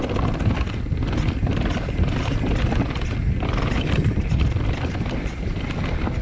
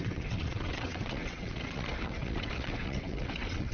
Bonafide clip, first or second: first